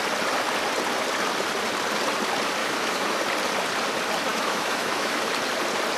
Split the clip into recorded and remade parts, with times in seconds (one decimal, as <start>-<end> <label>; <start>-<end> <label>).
0.0-2.6 recorded; 2.6-3.2 remade; 3.2-4.3 recorded; 4.3-5.3 remade; 5.3-6.0 recorded